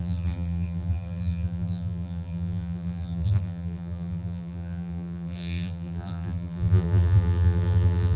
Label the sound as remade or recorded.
remade